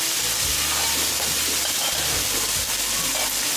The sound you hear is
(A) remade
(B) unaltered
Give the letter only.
B